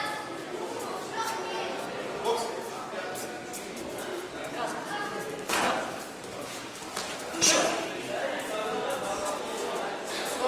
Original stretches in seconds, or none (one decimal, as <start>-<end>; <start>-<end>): 0.0-10.5